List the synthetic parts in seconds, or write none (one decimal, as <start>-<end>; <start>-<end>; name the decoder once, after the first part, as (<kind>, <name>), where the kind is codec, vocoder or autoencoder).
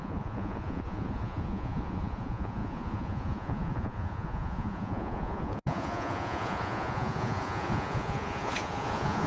0.0-9.3 (vocoder, Vocos)